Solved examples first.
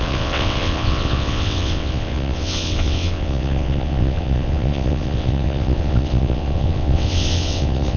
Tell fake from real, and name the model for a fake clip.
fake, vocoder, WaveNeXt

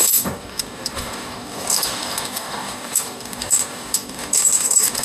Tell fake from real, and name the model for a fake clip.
fake, codec, DAC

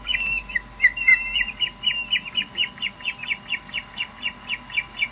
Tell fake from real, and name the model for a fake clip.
real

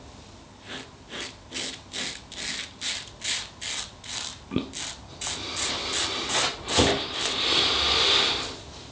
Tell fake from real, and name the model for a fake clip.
real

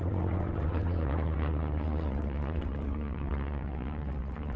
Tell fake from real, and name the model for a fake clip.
fake, vocoder, WaveNeXt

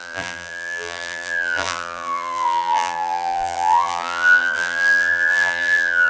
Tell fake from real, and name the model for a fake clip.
fake, vocoder, BigVGAN v2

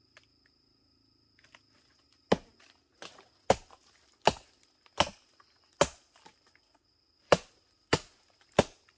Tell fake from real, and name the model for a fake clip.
real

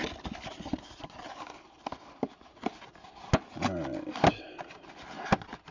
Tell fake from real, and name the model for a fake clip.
real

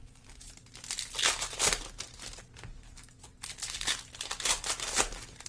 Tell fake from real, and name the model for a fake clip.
real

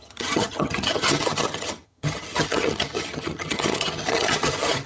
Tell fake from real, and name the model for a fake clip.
fake, vocoder, HiFi-GAN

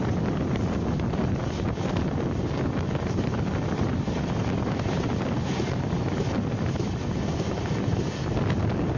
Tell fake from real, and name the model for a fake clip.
real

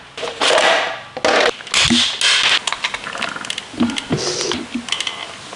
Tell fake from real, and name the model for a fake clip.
real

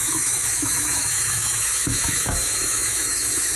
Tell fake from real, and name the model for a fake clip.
fake, autoencoder, DAC-VAE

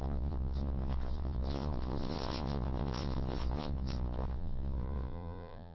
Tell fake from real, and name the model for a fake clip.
fake, vocoder, Vocos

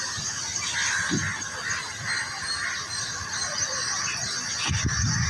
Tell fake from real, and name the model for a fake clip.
real